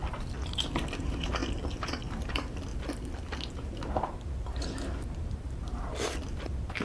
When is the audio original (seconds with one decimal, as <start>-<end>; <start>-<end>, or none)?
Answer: 0.0-1.0; 2.7-3.5